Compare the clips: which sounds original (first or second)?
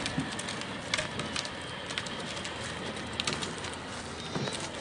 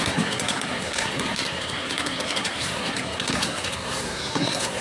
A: first